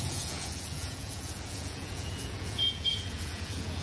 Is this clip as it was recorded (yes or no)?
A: no